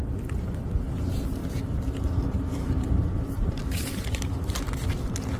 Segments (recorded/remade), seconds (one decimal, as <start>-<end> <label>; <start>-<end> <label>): 0.0-1.4 recorded; 1.4-4.6 remade; 4.6-5.4 recorded